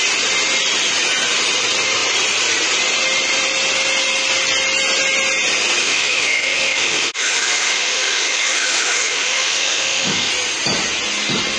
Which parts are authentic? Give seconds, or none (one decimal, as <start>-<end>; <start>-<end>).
0.0-5.8; 10.3-11.6